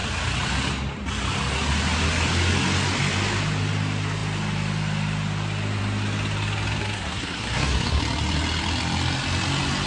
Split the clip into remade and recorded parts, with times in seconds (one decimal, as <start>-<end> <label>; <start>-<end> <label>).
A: 0.0-6.8 recorded; 6.8-8.0 remade; 8.0-9.9 recorded